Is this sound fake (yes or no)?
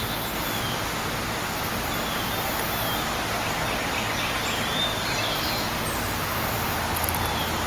no